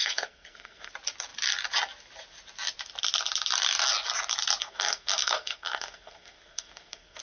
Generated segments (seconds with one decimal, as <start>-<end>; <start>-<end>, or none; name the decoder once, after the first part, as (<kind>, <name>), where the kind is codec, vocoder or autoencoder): 0.0-0.9 (codec, SNAC); 4.6-7.2